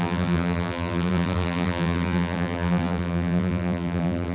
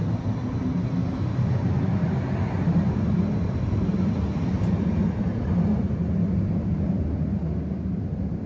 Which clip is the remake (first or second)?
first